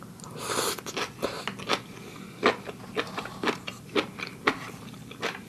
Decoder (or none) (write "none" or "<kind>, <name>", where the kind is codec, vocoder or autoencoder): none